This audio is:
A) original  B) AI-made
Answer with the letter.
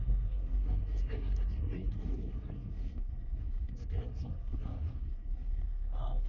B